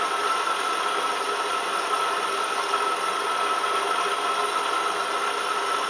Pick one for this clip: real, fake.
real